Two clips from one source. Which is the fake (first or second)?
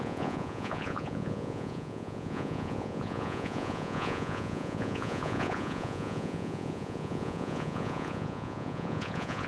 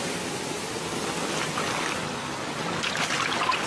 first